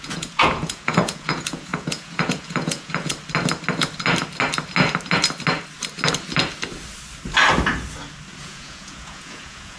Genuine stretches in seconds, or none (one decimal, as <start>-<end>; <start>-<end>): 3.1-8.4